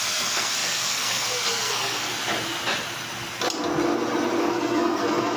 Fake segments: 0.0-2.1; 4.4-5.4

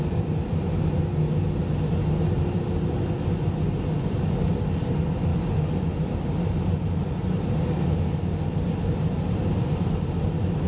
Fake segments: none

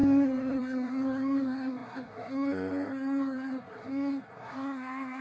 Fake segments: 0.0-5.2

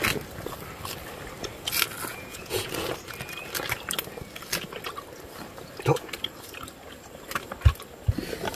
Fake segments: 2.1-2.7

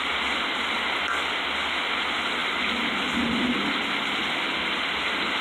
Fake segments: 2.4-4.3

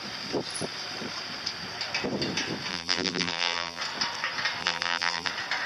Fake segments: 2.7-3.8; 4.6-5.3

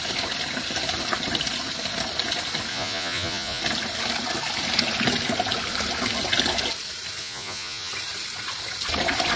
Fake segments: 2.7-3.6; 7.2-7.9